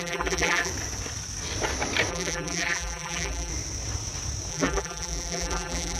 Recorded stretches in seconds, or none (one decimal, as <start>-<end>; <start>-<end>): 0.7-2.1; 3.5-4.5